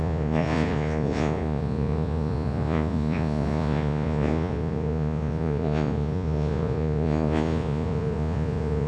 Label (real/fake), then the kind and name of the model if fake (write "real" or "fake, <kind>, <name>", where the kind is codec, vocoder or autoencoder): fake, vocoder, Vocos